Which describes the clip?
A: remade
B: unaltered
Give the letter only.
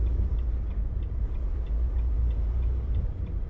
A